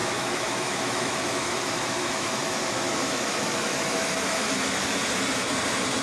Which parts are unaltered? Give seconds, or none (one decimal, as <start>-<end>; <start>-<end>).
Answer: 2.6-3.0; 5.0-6.0